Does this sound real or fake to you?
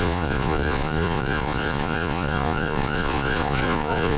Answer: fake